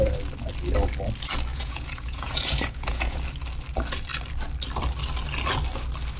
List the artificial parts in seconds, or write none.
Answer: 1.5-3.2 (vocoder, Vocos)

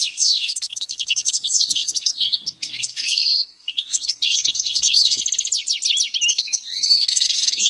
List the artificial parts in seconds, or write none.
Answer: 0.0-5.2 (codec, SNAC); 6.3-7.7

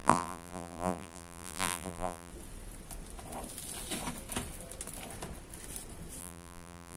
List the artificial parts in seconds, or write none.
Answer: 0.0-2.3 (vocoder, BigVGAN v2); 6.2-7.0

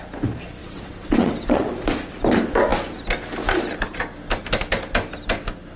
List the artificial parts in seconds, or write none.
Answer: 0.6-1.7 (vocoder, WaveNeXt)

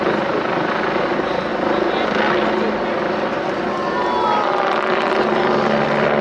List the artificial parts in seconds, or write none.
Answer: none

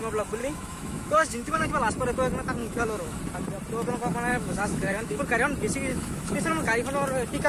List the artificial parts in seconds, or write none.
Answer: 0.4-1.7 (autoencoder, DAC-VAE); 2.6-3.2; 4.3-5.2; 5.9-6.5

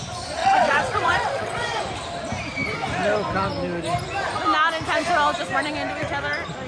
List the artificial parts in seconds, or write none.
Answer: 0.4-1.8 (vocoder, WaveNeXt)